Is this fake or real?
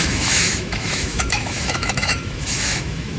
fake